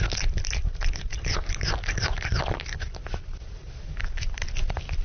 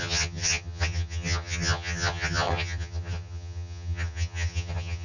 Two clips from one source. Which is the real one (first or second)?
first